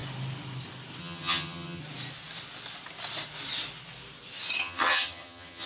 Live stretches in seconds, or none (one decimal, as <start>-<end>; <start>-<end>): 0.0-1.0; 1.8-4.6